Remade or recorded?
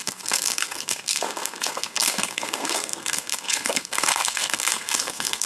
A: remade